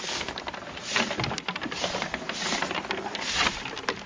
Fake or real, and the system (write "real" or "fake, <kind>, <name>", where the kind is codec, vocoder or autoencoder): real